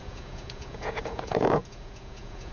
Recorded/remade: remade